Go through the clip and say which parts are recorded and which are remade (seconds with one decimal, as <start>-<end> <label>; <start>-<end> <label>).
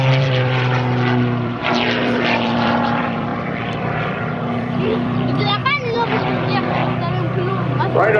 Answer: 0.0-6.8 remade; 6.8-8.2 recorded